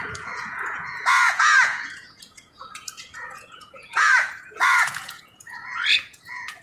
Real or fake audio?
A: fake